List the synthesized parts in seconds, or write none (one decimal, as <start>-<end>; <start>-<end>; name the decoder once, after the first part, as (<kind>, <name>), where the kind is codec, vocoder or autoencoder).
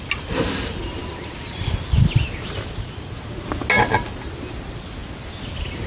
none